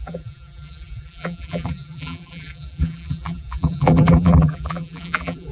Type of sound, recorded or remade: remade